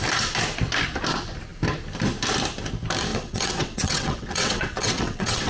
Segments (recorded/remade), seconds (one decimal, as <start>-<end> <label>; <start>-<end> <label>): 0.0-3.1 recorded; 3.1-5.5 remade